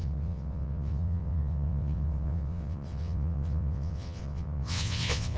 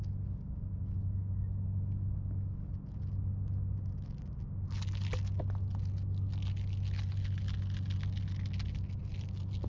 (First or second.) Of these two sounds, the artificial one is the first